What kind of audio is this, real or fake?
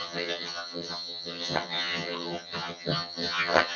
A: fake